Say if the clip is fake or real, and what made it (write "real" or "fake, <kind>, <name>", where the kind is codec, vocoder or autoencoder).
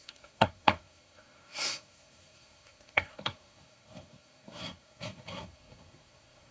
fake, codec, SNAC